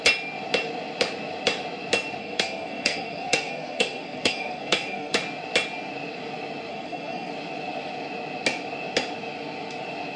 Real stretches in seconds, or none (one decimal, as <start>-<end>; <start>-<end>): 0.0-2.2; 5.2-6.7; 7.3-10.2